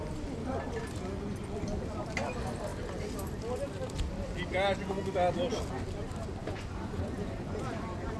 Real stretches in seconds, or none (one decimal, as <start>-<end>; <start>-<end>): 0.0-6.4; 7.6-8.2